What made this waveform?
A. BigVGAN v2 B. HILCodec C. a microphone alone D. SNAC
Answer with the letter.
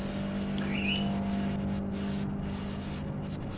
C